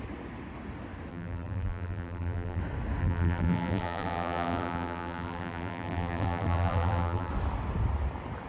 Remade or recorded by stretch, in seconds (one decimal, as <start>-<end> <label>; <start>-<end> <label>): 0.0-1.1 recorded; 1.1-2.6 remade; 2.6-3.0 recorded; 3.0-7.3 remade; 7.3-8.5 recorded